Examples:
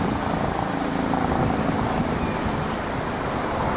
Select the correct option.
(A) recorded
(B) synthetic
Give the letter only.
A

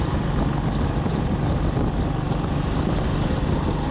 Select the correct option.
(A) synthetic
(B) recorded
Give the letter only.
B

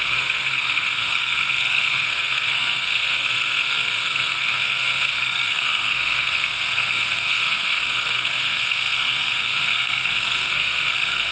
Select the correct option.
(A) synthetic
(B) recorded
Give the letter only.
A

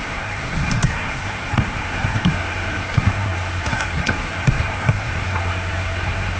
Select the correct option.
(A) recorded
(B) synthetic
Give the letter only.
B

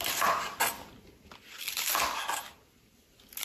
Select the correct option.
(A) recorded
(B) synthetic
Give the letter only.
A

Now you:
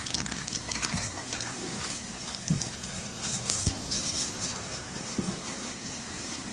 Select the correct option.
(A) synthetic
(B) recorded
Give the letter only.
A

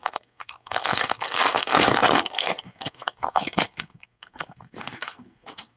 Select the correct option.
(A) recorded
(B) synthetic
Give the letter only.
B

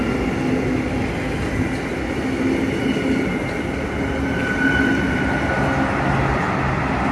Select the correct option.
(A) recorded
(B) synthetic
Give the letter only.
A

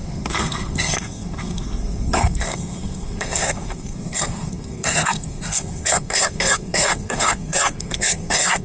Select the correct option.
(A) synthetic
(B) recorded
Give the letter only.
A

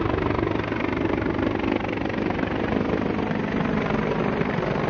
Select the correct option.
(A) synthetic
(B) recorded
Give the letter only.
B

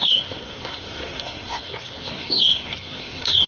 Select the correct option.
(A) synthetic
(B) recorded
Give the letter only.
A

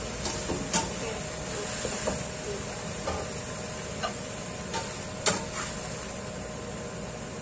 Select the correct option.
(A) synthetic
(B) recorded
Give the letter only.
B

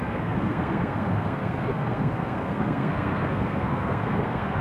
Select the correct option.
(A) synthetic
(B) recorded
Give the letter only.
A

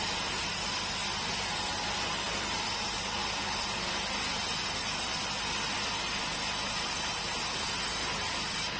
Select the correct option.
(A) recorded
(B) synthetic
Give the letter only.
A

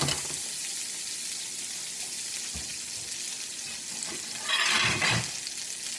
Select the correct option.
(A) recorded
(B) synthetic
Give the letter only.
A